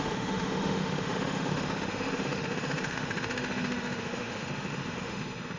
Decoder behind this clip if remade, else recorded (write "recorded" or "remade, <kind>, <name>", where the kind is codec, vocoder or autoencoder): remade, autoencoder, DAC-VAE